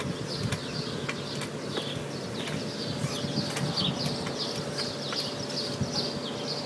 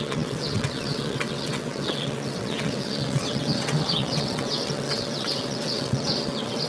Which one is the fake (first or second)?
second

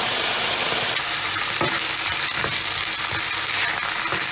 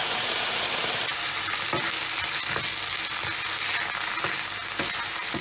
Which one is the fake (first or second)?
first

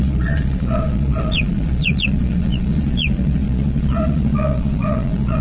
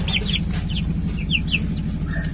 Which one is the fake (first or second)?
first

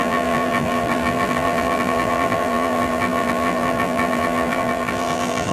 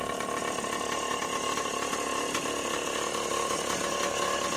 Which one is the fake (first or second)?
first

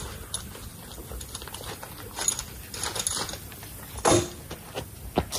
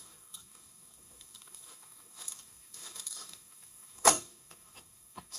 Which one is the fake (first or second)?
second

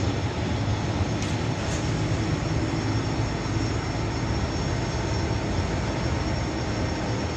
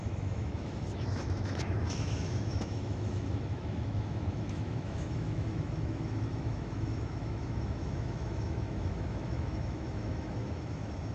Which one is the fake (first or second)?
second